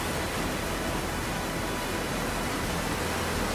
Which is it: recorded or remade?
recorded